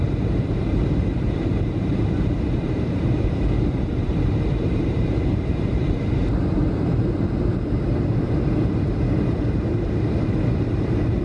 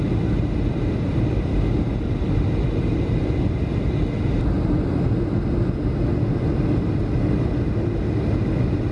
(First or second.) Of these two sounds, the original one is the second